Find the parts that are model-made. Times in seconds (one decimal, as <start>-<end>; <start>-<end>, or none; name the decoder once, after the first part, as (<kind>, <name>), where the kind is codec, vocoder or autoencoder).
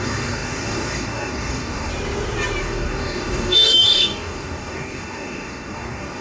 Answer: 0.0-1.9 (codec, DAC); 2.6-6.2